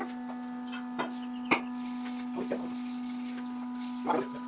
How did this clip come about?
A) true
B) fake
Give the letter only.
A